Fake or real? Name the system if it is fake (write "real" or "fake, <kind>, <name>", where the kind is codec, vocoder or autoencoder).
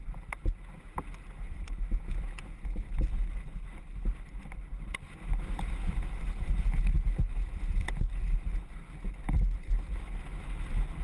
real